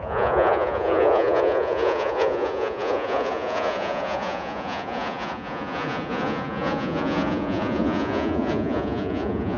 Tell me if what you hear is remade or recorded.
remade